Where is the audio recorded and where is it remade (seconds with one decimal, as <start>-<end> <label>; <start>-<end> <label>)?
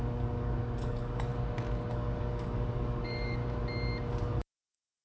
0.0-1.3 remade; 1.3-1.9 recorded; 1.9-3.4 remade; 3.4-4.1 recorded; 4.1-5.0 remade